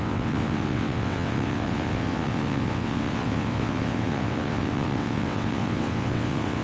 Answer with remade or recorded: remade